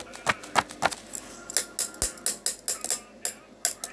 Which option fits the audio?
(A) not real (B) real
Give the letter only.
B